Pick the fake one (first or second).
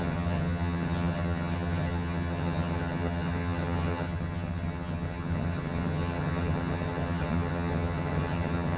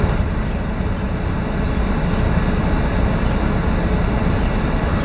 first